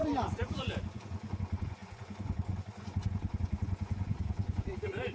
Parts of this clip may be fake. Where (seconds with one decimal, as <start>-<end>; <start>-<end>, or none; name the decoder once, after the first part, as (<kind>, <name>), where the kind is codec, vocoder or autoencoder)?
0.0-5.1 (vocoder, Vocos)